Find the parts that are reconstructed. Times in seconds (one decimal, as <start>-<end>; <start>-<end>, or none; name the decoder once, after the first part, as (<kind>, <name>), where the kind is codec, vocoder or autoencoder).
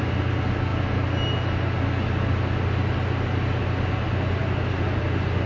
none